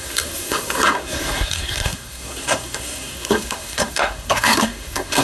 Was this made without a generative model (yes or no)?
no